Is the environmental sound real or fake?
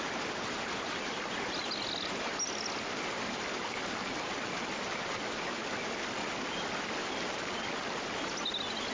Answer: real